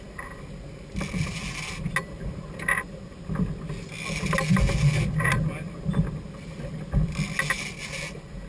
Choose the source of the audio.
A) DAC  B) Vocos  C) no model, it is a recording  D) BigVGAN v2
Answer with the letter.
C